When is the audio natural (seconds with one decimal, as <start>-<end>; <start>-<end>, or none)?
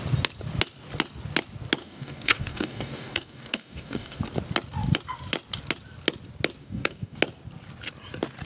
0.0-1.8; 4.2-6.6; 7.2-8.5